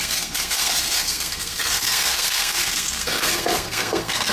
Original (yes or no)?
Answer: no